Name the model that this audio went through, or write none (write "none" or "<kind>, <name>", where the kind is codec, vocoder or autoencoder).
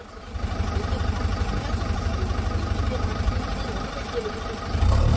none